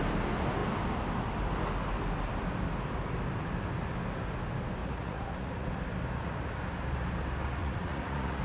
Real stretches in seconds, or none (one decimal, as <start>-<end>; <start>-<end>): 0.0-4.8; 5.7-7.6